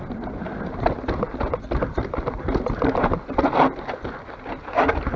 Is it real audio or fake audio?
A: real